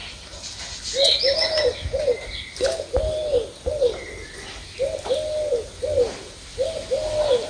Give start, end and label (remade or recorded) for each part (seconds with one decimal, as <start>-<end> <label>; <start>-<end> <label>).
0.0-7.5 recorded